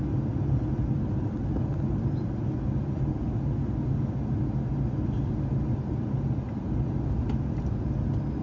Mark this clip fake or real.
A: real